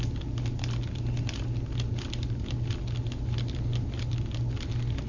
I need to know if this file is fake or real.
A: real